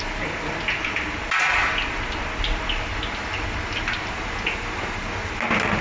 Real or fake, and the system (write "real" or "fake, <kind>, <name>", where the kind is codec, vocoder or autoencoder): real